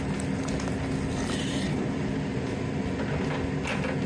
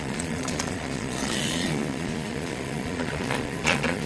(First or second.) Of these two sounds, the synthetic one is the second